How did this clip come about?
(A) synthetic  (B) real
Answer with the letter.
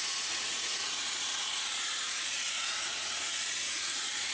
A